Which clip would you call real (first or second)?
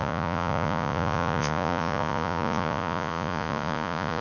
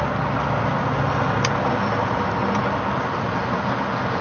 second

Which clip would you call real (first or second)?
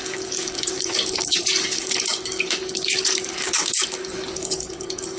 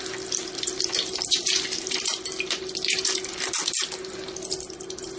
second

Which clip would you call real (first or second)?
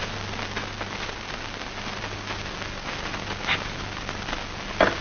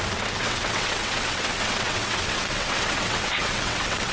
first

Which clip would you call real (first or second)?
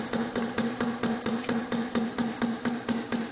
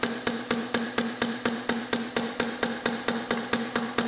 second